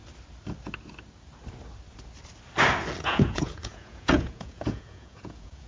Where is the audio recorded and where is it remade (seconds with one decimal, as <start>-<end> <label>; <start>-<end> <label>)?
0.0-3.0 recorded; 3.0-5.7 remade